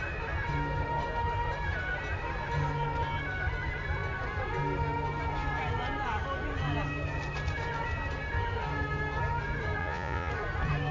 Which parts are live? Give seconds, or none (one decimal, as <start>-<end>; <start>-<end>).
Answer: 0.0-9.8; 10.3-10.9